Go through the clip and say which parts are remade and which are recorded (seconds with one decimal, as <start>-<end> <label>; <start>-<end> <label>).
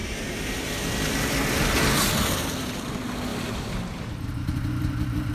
0.0-1.3 remade; 1.3-3.3 recorded; 3.3-5.3 remade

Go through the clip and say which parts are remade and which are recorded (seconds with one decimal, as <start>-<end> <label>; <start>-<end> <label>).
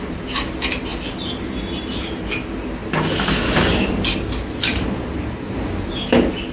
0.0-6.5 recorded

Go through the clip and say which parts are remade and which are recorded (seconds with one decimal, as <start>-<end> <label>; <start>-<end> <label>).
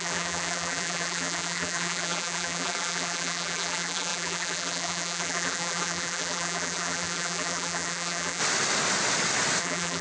0.0-8.4 remade; 8.4-9.6 recorded; 9.6-10.0 remade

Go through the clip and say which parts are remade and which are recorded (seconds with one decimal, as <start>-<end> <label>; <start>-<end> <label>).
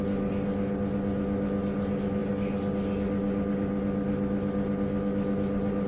0.0-5.9 recorded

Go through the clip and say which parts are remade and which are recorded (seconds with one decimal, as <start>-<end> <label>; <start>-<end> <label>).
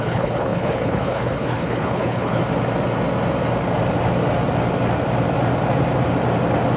0.0-2.4 remade; 2.4-6.8 recorded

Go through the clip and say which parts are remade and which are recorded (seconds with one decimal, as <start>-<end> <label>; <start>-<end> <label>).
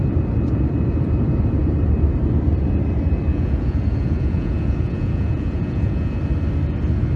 0.0-3.3 recorded; 3.3-6.2 remade; 6.2-7.2 recorded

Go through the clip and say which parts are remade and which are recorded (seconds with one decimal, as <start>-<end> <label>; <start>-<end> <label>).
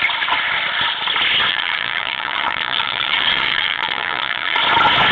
0.0-1.5 recorded; 1.5-4.6 remade; 4.6-5.1 recorded